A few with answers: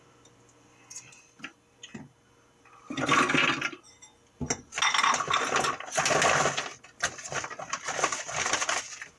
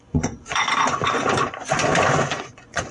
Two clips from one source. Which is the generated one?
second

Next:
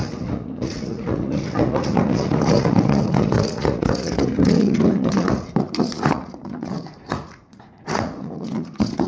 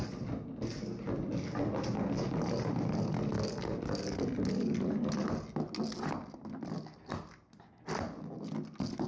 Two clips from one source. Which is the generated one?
first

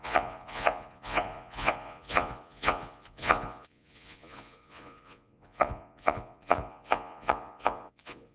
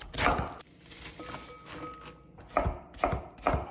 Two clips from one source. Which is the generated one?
first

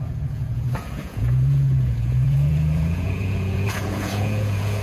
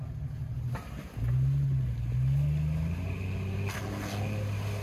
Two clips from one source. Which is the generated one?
first